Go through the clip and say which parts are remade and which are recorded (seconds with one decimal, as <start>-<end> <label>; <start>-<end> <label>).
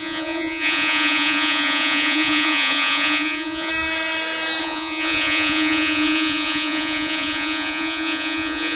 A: 0.0-3.7 remade; 3.7-4.6 recorded; 4.6-8.8 remade